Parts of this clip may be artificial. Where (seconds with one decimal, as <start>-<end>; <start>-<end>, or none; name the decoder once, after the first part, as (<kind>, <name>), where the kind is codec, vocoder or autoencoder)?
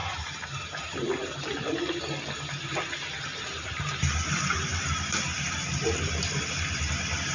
0.0-1.7 (vocoder, BigVGAN v2); 2.5-7.3